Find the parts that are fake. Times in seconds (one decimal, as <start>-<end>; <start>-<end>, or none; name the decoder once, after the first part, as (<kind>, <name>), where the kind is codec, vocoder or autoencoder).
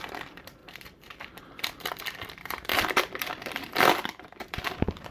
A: 0.0-2.7 (vocoder, BigVGAN v2); 3.7-5.1